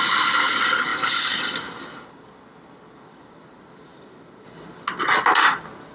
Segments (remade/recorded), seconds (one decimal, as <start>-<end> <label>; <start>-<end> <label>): 0.0-5.9 recorded